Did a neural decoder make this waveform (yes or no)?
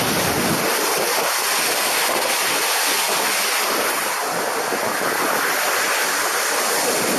no